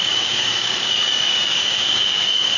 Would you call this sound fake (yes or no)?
yes